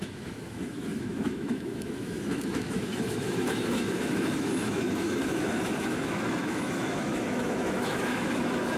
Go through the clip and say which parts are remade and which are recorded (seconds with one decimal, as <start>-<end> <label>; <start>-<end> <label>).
0.0-8.8 remade